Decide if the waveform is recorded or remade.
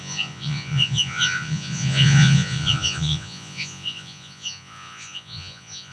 remade